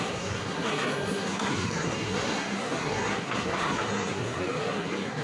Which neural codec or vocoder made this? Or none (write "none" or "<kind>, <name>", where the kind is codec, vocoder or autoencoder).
codec, SNAC